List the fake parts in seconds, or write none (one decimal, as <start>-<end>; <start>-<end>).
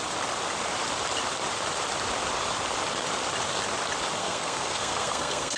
4.2-5.6